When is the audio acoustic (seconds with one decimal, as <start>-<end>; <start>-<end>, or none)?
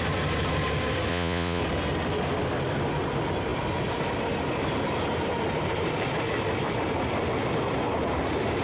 0.0-1.1; 1.6-8.6